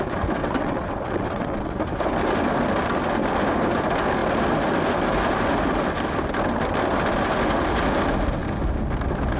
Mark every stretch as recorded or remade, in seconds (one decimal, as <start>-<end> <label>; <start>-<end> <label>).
0.0-0.4 recorded; 0.4-1.8 remade; 1.8-9.4 recorded